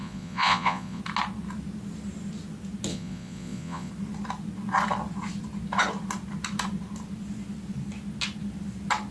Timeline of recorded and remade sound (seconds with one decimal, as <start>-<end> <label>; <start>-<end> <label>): 0.0-1.0 remade; 1.0-2.9 recorded; 2.9-3.9 remade; 3.9-9.1 recorded